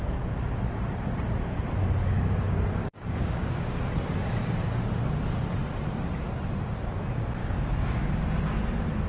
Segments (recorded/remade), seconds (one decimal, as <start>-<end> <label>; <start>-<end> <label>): 0.0-2.0 recorded; 2.0-3.8 remade; 3.8-7.4 recorded; 7.4-8.2 remade; 8.2-9.1 recorded